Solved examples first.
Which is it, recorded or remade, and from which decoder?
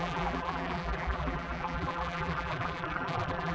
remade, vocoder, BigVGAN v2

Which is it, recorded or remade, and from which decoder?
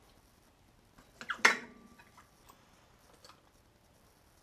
recorded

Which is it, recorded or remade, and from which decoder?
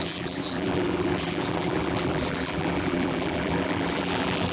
remade, vocoder, BigVGAN v2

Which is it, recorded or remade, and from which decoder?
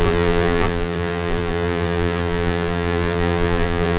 remade, vocoder, BigVGAN v2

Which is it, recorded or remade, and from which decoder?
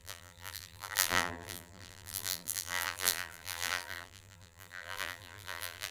remade, vocoder, BigVGAN v2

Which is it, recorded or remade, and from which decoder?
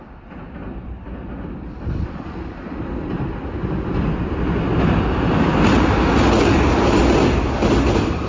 recorded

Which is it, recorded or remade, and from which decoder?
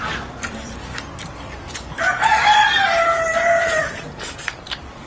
remade, vocoder, BigVGAN v2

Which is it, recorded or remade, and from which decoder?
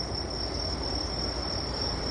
recorded